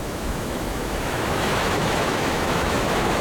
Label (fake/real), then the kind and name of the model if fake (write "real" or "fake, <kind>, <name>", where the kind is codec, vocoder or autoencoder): fake, autoencoder, DAC-VAE